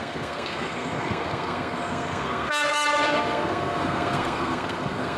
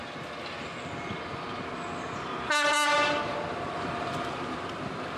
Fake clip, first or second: first